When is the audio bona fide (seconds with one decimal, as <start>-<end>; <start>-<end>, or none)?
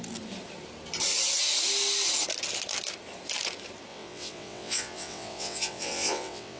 0.0-3.9